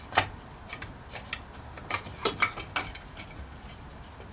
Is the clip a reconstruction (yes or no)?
no